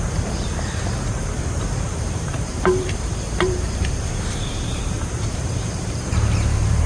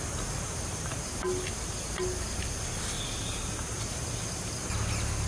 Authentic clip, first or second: second